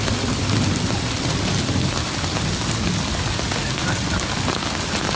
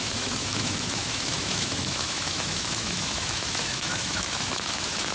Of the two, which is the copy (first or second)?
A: second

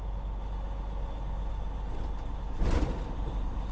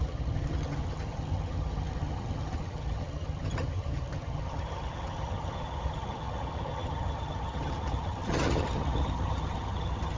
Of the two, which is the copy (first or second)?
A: second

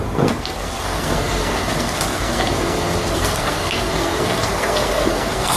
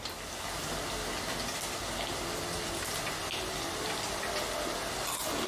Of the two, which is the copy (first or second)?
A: first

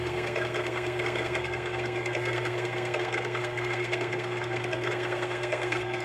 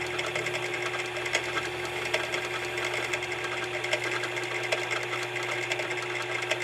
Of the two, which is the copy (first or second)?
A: first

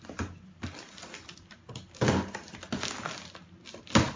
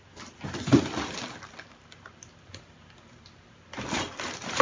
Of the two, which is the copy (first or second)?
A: second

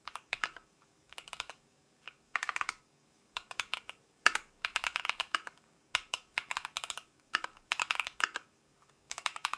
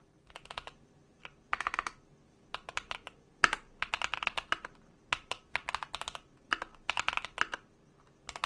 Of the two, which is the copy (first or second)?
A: first